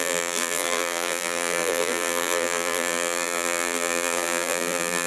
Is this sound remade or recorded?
remade